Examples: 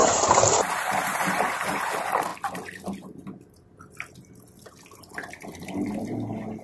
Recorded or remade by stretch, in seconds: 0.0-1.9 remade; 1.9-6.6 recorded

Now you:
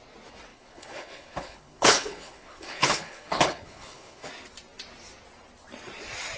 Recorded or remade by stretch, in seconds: 0.0-0.5 recorded; 0.5-4.3 remade; 4.3-6.4 recorded

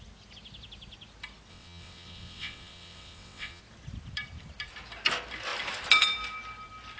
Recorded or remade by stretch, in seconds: 0.0-1.5 recorded; 1.5-3.6 remade; 3.6-7.0 recorded

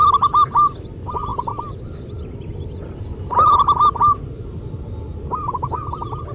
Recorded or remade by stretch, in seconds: 0.0-6.3 recorded